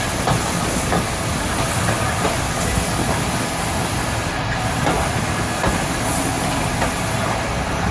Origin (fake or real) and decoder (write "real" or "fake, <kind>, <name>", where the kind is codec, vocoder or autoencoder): real